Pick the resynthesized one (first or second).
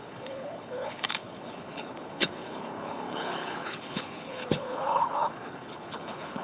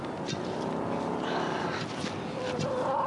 first